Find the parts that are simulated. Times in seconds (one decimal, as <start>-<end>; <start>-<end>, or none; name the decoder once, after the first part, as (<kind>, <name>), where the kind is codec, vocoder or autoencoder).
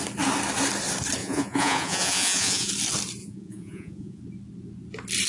1.2-2.7 (vocoder, Vocos); 3.2-4.2